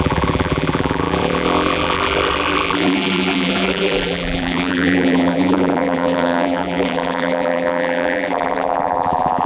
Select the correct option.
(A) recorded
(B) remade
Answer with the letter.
B